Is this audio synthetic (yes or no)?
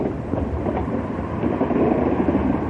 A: yes